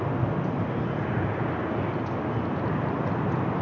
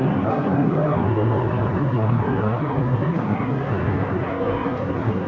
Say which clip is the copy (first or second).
second